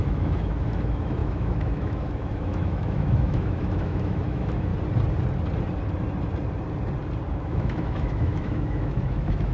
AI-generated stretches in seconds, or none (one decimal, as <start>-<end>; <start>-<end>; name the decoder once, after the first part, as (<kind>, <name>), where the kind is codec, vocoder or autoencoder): 0.0-4.7 (autoencoder, DAC-VAE); 7.3-9.5